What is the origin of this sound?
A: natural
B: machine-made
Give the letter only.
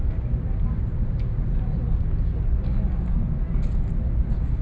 A